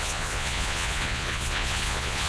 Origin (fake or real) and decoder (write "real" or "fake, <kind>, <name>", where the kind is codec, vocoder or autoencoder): fake, vocoder, Vocos